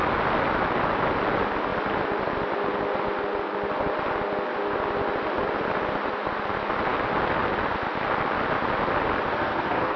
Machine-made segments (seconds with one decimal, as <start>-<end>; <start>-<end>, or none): 9.3-10.0